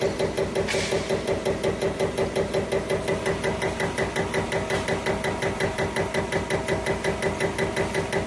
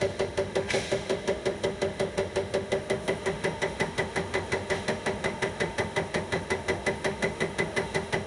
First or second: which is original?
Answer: first